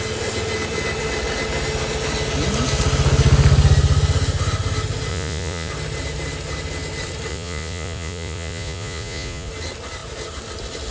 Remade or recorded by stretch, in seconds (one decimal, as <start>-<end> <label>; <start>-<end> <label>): 0.0-5.1 recorded; 5.1-5.7 remade; 5.7-7.3 recorded; 7.3-9.5 remade; 9.5-10.9 recorded